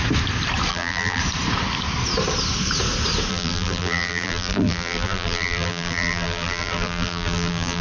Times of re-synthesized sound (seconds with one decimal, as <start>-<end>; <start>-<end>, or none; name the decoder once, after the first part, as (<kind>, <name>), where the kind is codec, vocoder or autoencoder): 0.7-1.2 (vocoder, BigVGAN v2); 3.3-7.8